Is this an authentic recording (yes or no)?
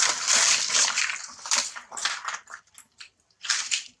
yes